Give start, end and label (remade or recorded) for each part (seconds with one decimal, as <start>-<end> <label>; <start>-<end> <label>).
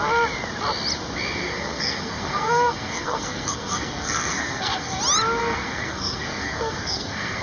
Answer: 0.0-1.4 recorded; 1.4-5.0 remade; 5.0-5.4 recorded; 5.4-7.4 remade